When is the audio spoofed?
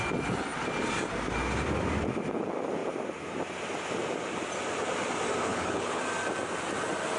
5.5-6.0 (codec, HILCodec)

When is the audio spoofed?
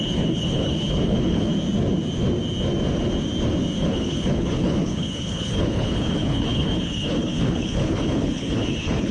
0.0-1.5 (codec, HILCodec); 3.8-9.1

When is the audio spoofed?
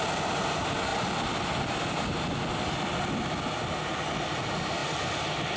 none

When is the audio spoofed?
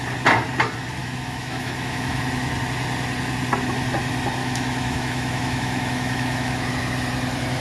1.0-2.2 (autoencoder, DAC-VAE); 4.4-6.7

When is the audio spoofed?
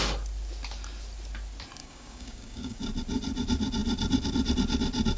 1.8-2.8 (codec, DAC)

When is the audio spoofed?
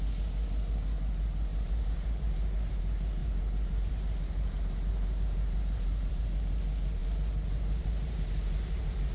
1.5-2.8 (vocoder, BigVGAN v2); 3.2-6.2; 7.0-9.1